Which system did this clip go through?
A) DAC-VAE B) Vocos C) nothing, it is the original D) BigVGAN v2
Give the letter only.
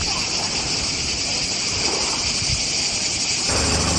C